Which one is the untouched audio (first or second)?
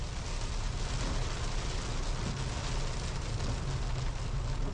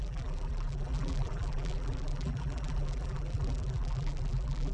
first